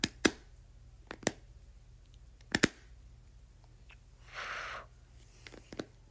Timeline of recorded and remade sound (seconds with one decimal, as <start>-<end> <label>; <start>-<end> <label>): 0.0-6.1 recorded